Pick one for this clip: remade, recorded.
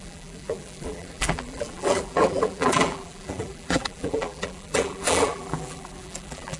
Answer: remade